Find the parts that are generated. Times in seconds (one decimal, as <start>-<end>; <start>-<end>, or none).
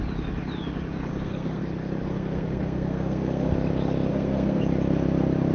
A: 1.1-1.6; 2.1-3.5; 4.1-4.6